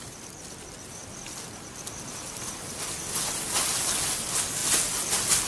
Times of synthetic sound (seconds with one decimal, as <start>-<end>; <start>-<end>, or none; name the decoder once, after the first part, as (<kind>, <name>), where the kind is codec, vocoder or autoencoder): none